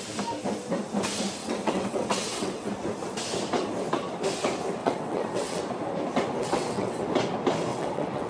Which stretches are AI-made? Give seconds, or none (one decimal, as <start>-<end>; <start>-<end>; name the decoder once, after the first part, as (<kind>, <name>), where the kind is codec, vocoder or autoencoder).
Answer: 1.4-2.7 (vocoder, WaveNeXt); 4.8-5.6; 6.4-7.1; 7.7-8.3